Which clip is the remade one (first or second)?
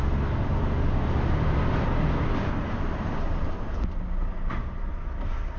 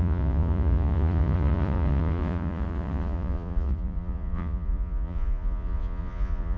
second